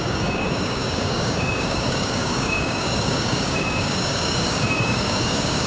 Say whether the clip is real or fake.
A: fake